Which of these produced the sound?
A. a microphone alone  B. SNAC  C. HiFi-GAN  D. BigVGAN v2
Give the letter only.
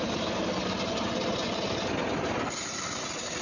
A